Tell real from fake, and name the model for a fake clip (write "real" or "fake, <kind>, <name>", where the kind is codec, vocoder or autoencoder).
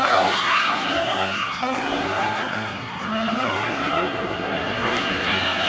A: fake, codec, SNAC